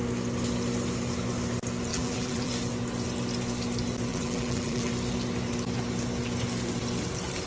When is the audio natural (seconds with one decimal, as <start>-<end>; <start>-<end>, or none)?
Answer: 0.0-1.9; 2.5-4.1; 4.9-7.5